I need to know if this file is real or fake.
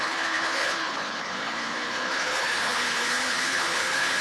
fake